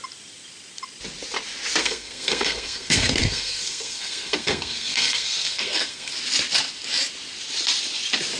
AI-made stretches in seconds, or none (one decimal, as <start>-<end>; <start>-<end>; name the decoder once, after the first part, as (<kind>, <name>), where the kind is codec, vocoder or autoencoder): 1.8-6.1 (codec, SNAC)